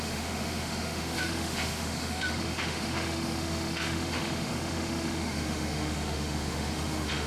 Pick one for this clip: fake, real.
fake